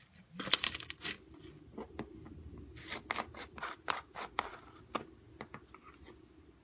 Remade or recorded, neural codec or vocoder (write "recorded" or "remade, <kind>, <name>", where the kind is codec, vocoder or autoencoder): recorded